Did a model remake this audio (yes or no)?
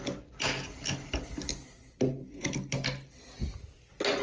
no